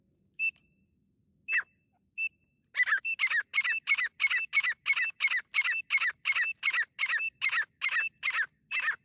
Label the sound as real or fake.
real